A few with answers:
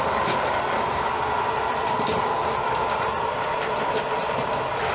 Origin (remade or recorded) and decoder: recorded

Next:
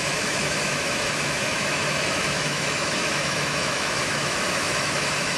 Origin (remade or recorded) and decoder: remade, autoencoder, DAC-VAE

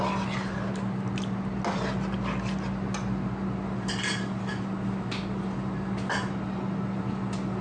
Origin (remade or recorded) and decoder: recorded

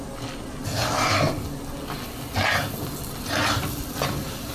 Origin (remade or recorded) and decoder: recorded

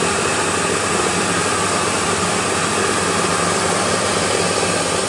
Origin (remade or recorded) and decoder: remade, vocoder, BigVGAN v2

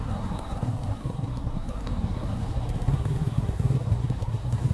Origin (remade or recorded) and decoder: remade, codec, SNAC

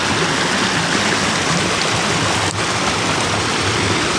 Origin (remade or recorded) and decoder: recorded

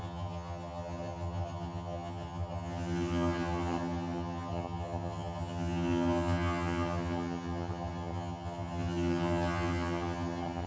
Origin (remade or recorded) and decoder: remade, vocoder, HiFi-GAN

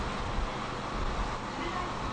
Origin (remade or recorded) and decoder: recorded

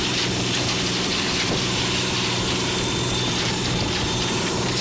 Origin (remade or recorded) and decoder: remade, vocoder, BigVGAN v2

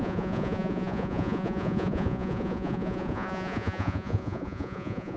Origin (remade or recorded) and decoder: remade, vocoder, Vocos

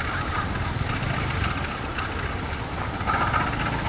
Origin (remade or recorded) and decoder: recorded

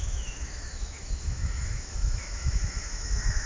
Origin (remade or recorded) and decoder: remade, autoencoder, DAC-VAE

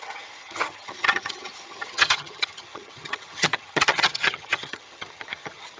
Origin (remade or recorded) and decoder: remade, vocoder, HiFi-GAN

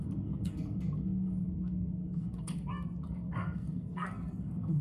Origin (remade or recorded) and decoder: remade, codec, SNAC